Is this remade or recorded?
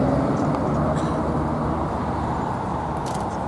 recorded